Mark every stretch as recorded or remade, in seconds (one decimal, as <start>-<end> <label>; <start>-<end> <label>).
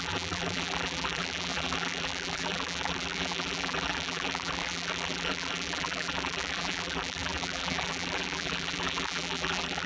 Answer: 0.0-9.9 remade